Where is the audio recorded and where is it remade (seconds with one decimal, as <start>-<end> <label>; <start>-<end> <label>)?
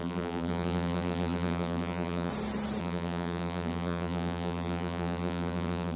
0.0-2.3 remade; 2.3-2.8 recorded; 2.8-6.0 remade